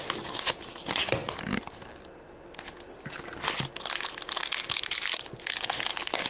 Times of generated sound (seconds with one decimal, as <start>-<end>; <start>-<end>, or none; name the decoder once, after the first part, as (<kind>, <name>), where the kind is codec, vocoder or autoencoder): none